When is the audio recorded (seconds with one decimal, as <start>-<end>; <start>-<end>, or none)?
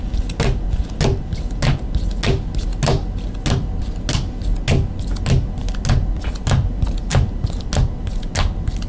0.0-7.1; 7.7-8.9